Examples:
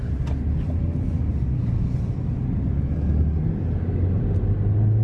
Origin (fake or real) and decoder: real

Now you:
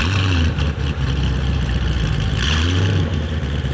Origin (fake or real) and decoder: fake, vocoder, BigVGAN v2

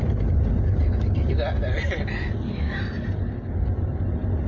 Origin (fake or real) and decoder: real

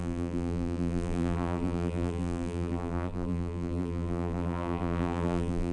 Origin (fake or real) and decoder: fake, vocoder, BigVGAN v2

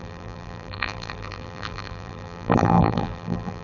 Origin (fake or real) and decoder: fake, vocoder, BigVGAN v2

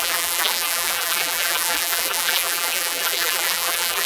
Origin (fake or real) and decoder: fake, vocoder, BigVGAN v2